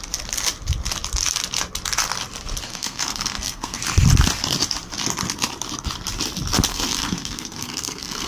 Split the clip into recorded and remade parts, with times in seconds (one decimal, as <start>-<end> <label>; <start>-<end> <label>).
0.0-2.7 recorded; 2.7-3.8 remade; 3.8-6.7 recorded; 6.7-8.3 remade